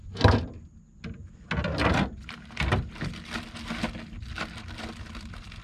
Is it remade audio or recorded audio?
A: recorded